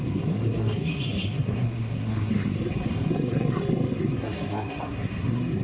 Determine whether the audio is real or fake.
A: fake